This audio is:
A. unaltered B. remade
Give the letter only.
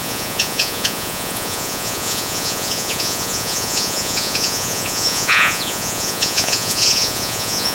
B